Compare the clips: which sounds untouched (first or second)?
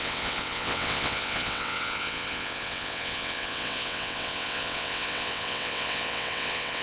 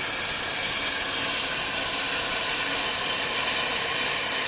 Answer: second